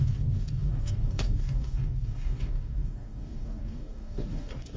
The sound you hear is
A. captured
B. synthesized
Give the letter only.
B